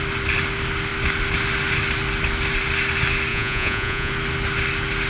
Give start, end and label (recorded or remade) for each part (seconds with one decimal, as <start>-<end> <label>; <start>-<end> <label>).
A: 0.0-3.3 recorded; 3.3-4.1 remade; 4.1-5.1 recorded